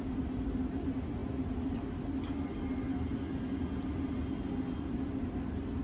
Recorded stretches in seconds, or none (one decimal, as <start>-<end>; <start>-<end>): 0.0-5.8